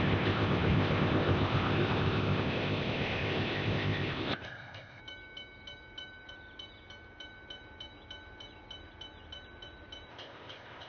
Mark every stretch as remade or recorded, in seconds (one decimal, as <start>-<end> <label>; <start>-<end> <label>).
0.0-5.0 remade; 5.0-10.1 recorded; 10.1-10.9 remade